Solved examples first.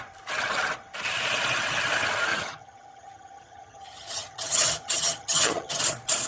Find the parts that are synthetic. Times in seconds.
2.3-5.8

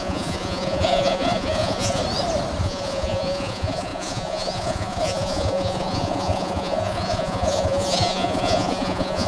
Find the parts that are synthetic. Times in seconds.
0.0-2.0; 2.6-9.3